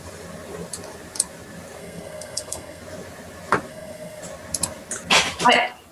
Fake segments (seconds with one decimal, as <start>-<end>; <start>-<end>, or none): 1.8-2.8; 3.7-4.2